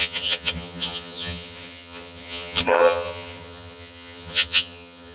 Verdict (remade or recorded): remade